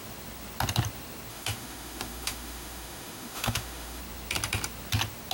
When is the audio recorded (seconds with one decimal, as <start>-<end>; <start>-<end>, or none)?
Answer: 0.0-1.3; 4.0-5.3